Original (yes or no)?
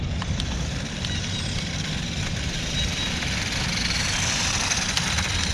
yes